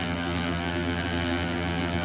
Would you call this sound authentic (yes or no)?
no